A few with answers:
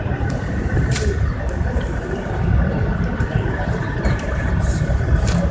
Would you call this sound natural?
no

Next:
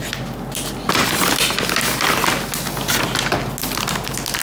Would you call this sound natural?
yes